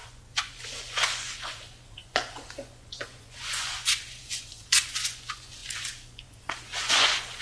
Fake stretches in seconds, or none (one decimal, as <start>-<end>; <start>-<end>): 0.0-7.4